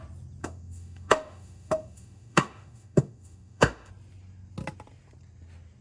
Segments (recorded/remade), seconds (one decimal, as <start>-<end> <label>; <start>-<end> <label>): 0.0-0.4 recorded; 0.4-3.9 remade; 3.9-5.8 recorded